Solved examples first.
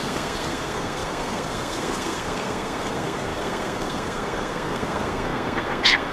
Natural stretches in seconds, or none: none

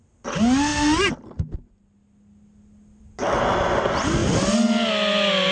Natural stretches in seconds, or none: 0.0-5.5

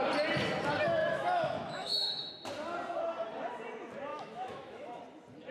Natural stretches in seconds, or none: 0.0-1.0; 2.3-4.1; 5.0-5.5